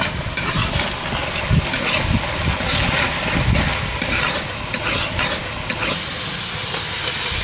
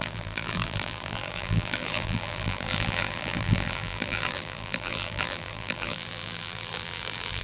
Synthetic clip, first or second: second